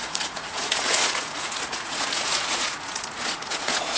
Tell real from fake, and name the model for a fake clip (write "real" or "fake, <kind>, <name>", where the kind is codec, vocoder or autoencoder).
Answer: fake, vocoder, Vocos